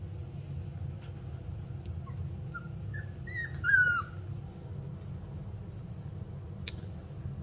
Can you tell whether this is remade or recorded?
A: recorded